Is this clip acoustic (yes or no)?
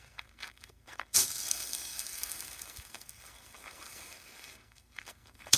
no